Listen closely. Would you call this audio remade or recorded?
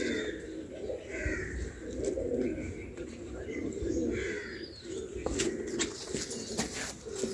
recorded